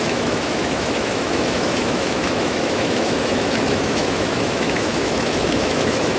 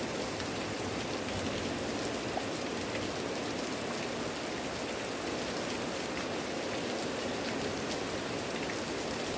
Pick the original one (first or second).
second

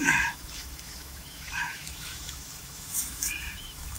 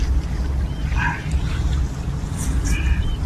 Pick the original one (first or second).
second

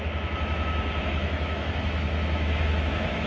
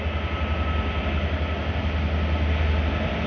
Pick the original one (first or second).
second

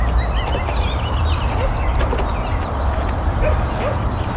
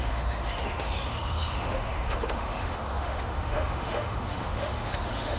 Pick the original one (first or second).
first